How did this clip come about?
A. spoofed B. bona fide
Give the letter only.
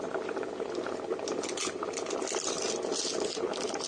B